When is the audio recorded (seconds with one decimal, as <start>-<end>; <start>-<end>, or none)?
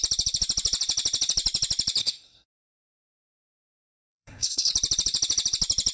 0.0-2.0; 2.7-3.9; 4.7-5.9